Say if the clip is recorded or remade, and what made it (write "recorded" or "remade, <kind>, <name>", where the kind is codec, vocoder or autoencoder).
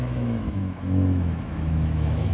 remade, autoencoder, DAC-VAE